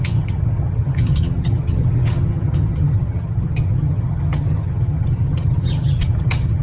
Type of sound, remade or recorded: remade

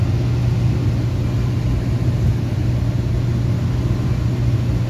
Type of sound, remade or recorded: recorded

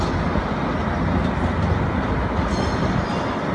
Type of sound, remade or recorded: recorded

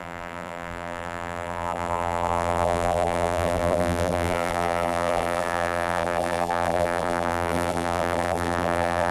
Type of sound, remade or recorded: remade